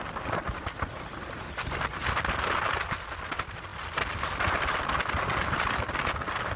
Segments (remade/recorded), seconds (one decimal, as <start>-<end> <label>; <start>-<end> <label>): 0.0-6.6 recorded